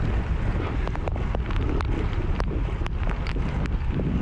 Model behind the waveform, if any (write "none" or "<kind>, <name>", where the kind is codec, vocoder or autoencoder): none